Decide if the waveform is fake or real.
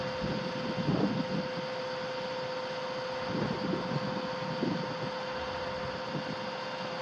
real